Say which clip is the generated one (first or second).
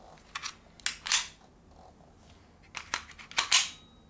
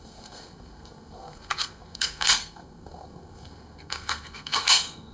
second